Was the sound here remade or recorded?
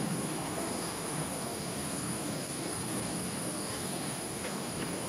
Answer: remade